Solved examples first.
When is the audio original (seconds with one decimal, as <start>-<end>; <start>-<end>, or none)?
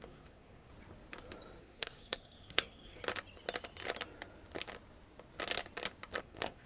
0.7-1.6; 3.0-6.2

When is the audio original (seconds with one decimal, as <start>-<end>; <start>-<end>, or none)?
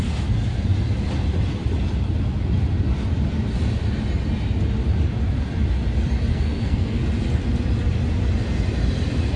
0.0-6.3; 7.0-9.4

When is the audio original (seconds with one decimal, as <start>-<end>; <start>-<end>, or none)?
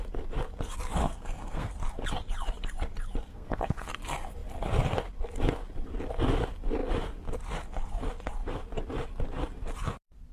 0.0-1.0; 1.7-3.3; 3.9-10.3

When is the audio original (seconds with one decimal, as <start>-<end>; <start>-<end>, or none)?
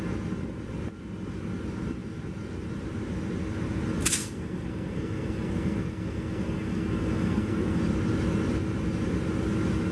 0.0-4.2; 7.8-9.9